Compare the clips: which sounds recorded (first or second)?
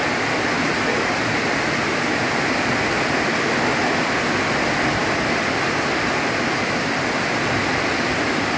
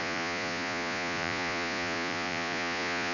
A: first